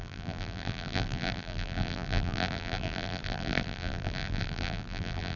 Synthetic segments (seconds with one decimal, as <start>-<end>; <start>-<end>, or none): 0.0-5.4